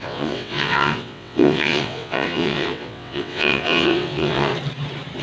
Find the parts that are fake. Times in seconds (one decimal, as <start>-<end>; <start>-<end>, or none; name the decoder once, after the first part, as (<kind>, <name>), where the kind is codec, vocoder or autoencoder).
0.0-4.5 (vocoder, WaveNeXt)